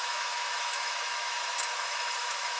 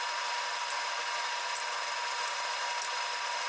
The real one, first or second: second